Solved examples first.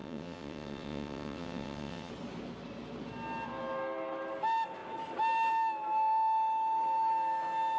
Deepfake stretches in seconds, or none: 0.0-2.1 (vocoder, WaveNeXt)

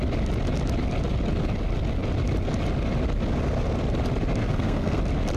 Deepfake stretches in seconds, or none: 4.4-5.0 (codec, SNAC)

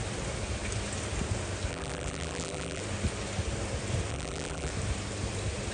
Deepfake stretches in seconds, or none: 1.7-2.8 (vocoder, BigVGAN v2); 4.1-4.7

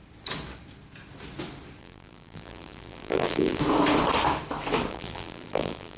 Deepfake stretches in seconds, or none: 1.8-3.6 (vocoder, BigVGAN v2); 4.9-6.0

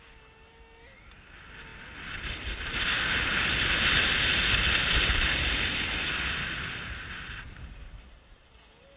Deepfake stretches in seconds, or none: none